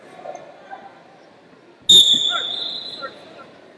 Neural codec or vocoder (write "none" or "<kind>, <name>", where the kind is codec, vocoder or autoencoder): none